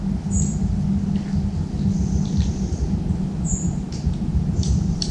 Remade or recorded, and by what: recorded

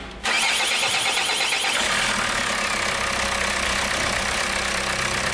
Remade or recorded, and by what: recorded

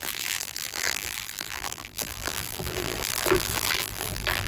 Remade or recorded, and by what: remade, vocoder, BigVGAN v2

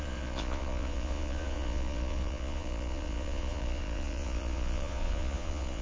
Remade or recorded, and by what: remade, vocoder, Vocos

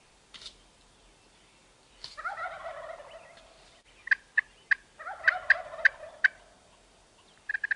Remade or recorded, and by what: recorded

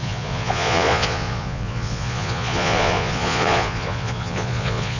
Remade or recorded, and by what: remade, vocoder, Vocos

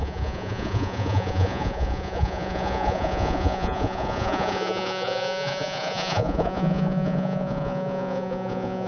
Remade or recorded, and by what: remade, vocoder, Vocos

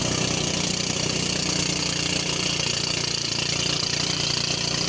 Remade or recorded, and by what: recorded